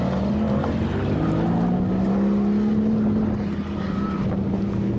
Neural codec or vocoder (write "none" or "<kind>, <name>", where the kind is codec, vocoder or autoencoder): none